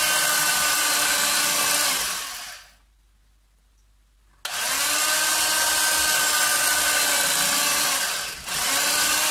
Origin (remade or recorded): recorded